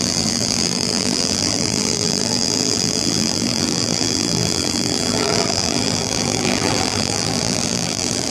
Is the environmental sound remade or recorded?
remade